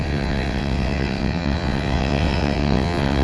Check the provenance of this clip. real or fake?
fake